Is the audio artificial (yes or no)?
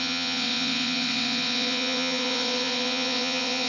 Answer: yes